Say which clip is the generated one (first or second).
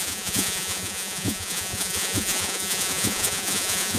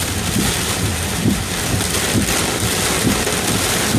first